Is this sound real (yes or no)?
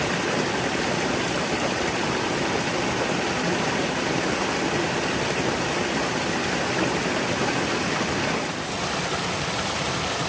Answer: yes